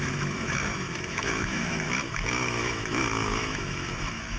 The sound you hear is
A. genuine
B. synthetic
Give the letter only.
B